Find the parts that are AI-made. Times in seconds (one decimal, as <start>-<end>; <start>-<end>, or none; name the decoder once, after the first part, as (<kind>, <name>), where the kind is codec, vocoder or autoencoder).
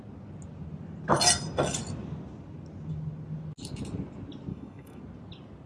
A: 4.5-5.0 (autoencoder, DAC-VAE)